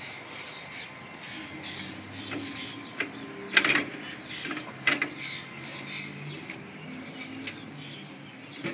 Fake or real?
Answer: real